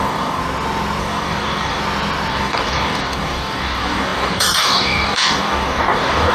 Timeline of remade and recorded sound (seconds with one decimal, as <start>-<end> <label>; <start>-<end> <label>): 0.0-0.4 remade; 0.4-1.0 recorded; 1.0-1.8 remade; 1.8-2.3 recorded; 2.3-6.3 remade